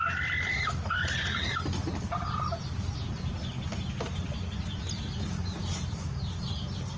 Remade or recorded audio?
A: recorded